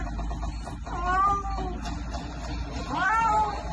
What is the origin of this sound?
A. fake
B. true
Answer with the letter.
B